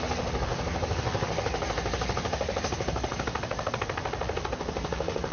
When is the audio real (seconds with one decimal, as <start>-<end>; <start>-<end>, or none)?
0.0-5.3